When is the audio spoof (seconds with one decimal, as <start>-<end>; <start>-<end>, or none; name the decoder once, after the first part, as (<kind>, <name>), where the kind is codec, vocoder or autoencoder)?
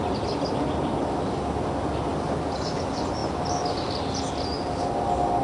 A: none